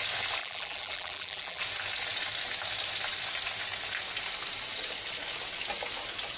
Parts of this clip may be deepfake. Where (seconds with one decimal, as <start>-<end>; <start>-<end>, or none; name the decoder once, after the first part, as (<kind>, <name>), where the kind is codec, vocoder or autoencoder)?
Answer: 0.4-1.6 (vocoder, BigVGAN v2)